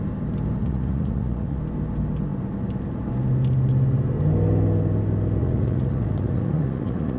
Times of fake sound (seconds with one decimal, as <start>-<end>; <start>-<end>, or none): 0.6-1.6; 5.4-7.2